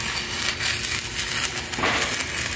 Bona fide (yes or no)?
yes